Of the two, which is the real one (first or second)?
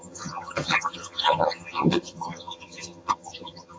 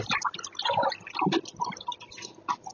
second